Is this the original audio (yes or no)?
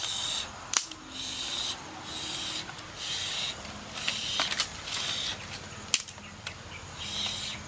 yes